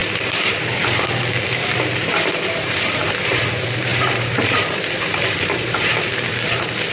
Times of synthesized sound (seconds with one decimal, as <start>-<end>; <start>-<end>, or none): 0.0-0.8; 2.0-3.4; 3.9-6.0

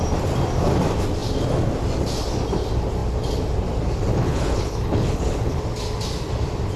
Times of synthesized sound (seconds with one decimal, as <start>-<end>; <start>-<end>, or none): 4.1-5.6

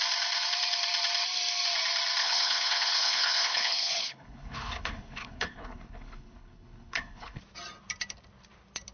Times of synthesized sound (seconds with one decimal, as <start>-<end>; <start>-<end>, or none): 2.2-7.4

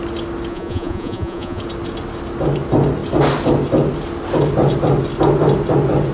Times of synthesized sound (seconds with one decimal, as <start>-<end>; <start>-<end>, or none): 0.5-1.6

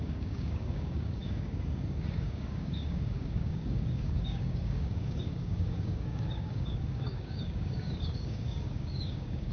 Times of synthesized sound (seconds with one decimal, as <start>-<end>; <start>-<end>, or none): 0.0-9.5

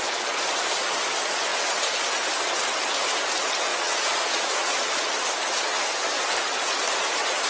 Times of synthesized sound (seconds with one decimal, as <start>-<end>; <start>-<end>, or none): 3.7-4.9

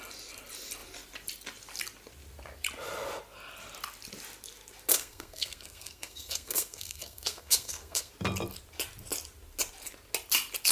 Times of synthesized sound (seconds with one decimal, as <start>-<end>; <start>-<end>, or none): 4.9-8.1

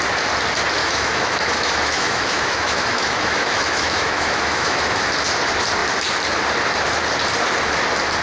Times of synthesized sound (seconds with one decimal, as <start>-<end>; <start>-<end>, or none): 0.8-5.1